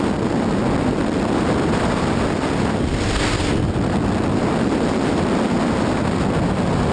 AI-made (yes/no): no